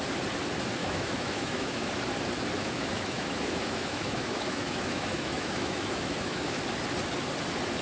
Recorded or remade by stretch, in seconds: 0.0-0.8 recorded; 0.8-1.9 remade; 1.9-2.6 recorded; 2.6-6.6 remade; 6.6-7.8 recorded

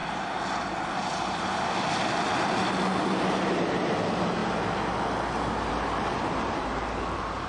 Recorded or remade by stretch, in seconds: 0.0-7.5 recorded

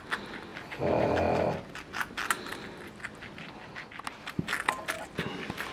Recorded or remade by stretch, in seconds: 0.0-5.7 recorded